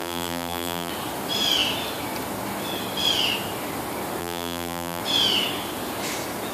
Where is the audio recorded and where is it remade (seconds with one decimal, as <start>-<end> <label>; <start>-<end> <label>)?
0.0-0.9 remade; 0.9-4.2 recorded; 4.2-5.0 remade; 5.0-6.5 recorded